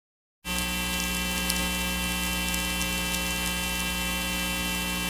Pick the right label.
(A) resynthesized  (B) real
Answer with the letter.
B